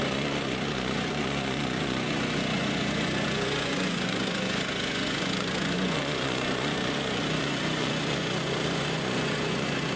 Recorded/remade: remade